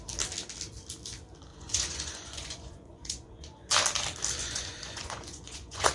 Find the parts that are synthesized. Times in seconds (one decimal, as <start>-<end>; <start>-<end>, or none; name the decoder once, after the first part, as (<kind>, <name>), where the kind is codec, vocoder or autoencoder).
1.5-3.7 (vocoder, Vocos); 4.4-5.9